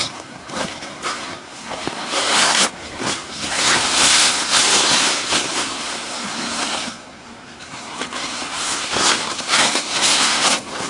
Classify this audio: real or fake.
fake